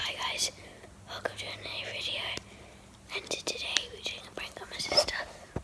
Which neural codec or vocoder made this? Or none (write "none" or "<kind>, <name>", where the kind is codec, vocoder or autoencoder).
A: none